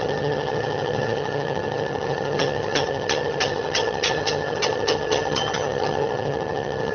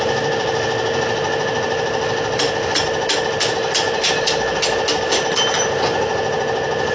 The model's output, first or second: first